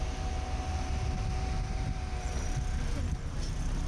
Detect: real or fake fake